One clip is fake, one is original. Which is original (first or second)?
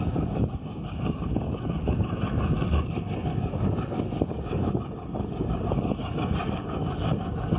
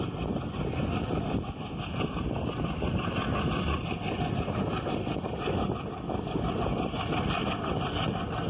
second